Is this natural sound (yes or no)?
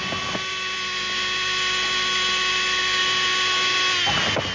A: yes